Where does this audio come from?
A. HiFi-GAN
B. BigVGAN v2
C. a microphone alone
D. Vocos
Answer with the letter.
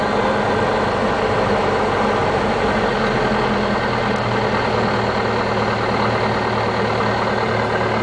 C